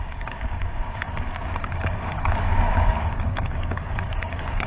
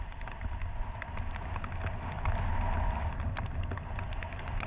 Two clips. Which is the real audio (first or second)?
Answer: second